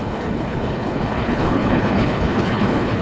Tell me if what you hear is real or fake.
fake